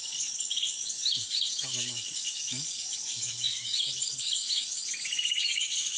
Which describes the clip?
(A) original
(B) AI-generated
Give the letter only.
B